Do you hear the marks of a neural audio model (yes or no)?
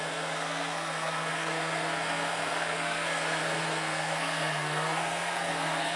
yes